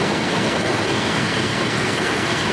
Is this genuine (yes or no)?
no